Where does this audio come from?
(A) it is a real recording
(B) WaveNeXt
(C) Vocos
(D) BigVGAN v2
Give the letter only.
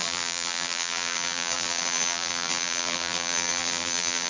D